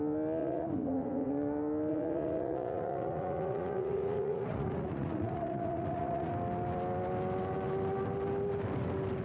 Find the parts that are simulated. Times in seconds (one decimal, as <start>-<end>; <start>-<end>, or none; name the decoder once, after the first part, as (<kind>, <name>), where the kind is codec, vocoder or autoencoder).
0.4-1.3 (vocoder, Vocos); 1.9-6.3